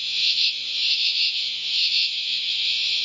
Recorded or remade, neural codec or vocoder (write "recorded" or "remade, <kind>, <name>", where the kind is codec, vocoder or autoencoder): remade, vocoder, WaveNeXt